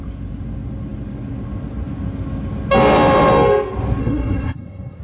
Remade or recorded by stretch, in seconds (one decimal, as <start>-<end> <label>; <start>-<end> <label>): 0.0-4.0 recorded; 4.0-5.0 remade